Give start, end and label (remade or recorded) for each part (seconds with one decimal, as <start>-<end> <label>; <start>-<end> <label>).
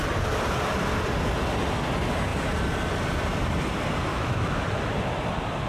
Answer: 0.0-4.1 recorded; 4.1-4.6 remade; 4.6-5.7 recorded